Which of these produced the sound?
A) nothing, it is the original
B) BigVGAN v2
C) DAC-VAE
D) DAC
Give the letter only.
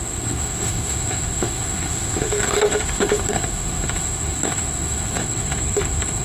C